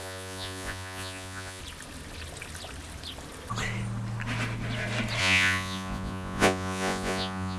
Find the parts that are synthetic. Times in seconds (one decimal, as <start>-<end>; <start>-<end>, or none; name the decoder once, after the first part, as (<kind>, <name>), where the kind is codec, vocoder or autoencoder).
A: 0.0-1.6 (vocoder, Vocos); 5.2-7.6